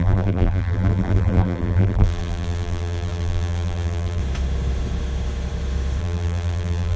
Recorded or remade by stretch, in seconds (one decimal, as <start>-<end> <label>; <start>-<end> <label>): 0.0-4.2 remade; 4.2-6.0 recorded; 6.0-7.0 remade